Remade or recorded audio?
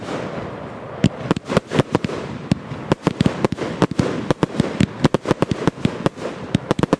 recorded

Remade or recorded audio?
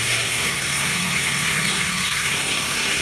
remade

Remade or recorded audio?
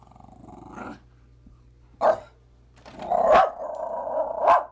recorded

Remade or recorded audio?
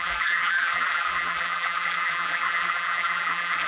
remade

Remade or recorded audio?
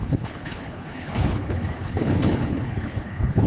remade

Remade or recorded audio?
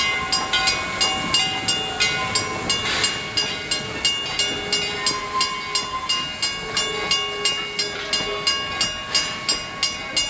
recorded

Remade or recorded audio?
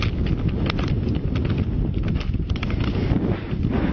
recorded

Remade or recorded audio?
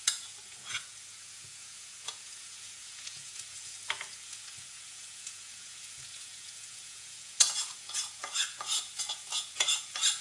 remade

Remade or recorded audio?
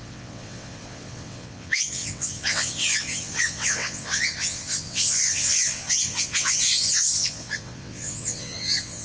remade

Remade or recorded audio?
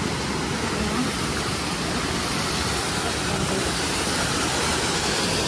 recorded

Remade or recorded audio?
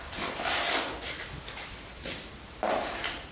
remade